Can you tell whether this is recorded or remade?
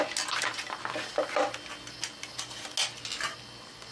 recorded